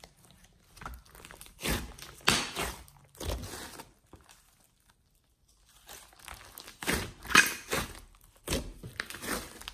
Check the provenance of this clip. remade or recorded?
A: recorded